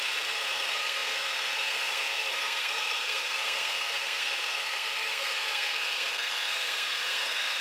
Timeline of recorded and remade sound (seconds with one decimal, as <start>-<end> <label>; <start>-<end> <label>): 0.0-7.6 remade